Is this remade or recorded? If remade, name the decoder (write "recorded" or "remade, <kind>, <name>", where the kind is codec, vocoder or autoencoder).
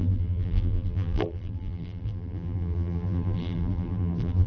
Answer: remade, vocoder, BigVGAN v2